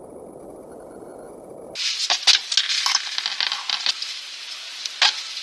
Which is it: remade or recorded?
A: recorded